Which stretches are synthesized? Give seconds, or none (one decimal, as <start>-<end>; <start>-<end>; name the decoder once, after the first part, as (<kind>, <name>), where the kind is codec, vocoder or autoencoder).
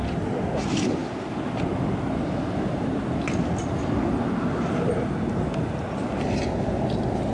none